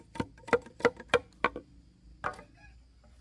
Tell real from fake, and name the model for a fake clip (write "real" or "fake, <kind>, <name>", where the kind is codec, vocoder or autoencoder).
real